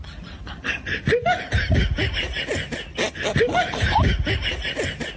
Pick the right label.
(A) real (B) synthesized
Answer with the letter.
A